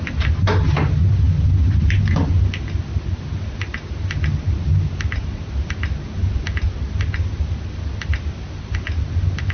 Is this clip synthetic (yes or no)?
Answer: no